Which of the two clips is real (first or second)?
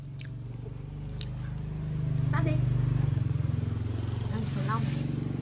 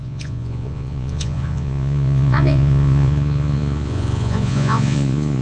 first